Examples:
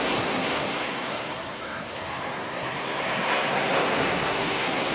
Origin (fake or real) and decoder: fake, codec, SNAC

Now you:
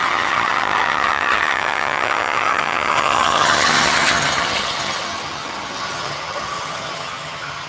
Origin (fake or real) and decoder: fake, vocoder, HiFi-GAN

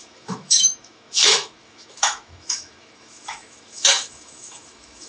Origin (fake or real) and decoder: fake, autoencoder, DAC-VAE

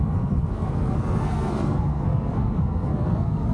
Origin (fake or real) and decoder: fake, codec, SNAC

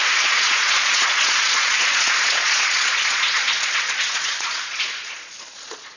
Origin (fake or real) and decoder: fake, vocoder, Vocos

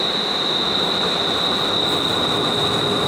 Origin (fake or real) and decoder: real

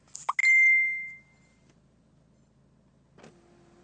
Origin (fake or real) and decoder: real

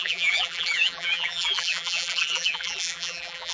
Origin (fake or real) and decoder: fake, vocoder, BigVGAN v2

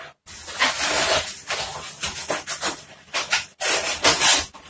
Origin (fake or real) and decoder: real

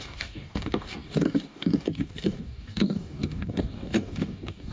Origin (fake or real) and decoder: fake, codec, DAC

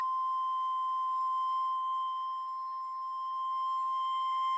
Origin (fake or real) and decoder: fake, autoencoder, DAC-VAE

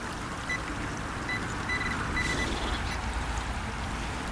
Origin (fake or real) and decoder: real